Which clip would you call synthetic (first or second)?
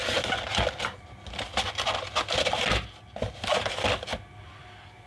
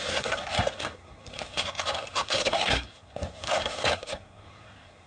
second